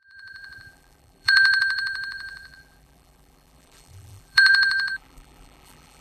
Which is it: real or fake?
fake